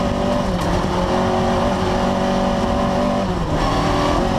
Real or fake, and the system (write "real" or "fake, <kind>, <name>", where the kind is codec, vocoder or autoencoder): real